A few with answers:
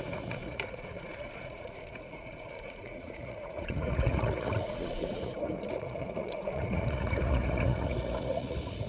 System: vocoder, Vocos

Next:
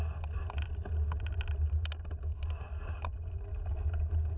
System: none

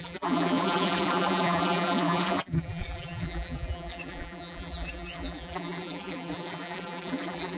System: vocoder, BigVGAN v2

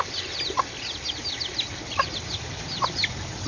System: none